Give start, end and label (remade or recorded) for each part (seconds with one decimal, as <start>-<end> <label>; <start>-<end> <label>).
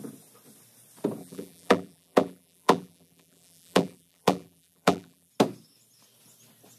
0.0-1.2 recorded; 1.2-5.3 remade; 5.3-6.8 recorded